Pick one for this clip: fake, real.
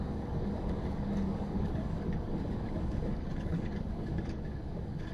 fake